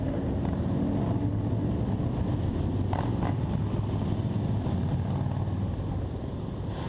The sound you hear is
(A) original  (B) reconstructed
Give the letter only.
A